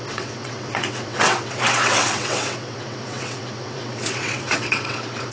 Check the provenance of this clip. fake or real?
fake